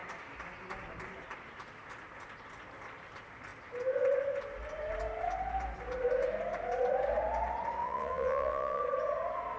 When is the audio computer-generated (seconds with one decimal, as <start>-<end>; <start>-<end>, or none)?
7.8-8.8